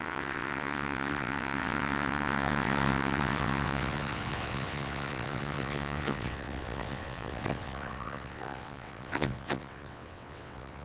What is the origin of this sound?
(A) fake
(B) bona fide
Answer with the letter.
A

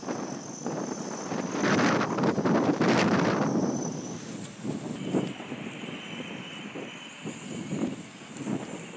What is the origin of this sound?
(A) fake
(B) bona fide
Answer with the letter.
B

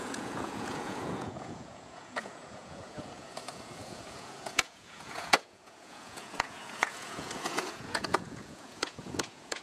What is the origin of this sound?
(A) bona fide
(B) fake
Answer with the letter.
B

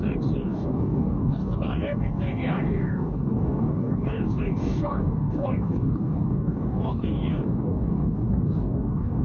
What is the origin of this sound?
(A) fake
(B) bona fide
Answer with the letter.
A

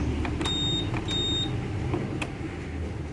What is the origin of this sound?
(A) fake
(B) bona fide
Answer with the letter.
B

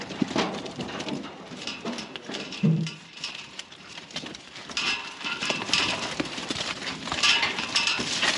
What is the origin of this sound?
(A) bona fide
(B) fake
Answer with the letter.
B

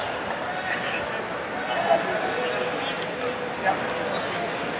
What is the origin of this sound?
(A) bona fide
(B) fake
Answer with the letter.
A